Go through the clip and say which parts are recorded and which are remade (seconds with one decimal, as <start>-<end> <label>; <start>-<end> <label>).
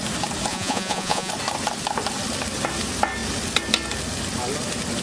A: 0.0-0.5 recorded; 0.5-1.3 remade; 1.3-5.0 recorded